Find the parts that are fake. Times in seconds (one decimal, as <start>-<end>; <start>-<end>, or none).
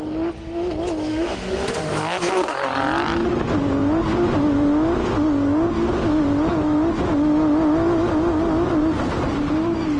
1.1-1.9